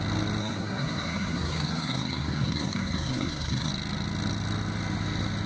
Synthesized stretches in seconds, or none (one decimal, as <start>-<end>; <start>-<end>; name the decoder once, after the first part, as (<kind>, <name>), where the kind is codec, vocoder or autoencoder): 0.4-3.7 (codec, SNAC)